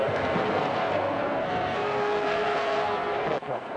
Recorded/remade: remade